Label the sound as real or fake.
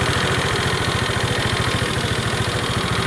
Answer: real